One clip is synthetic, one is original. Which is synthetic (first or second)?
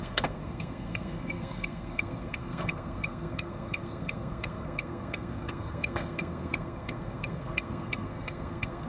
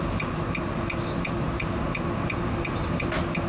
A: first